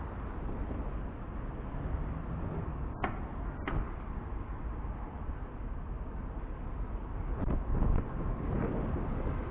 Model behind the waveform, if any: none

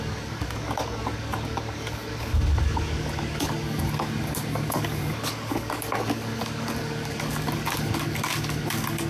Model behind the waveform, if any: codec, DAC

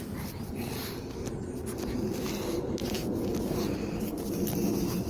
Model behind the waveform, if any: none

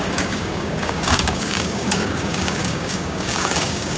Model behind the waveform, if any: codec, DAC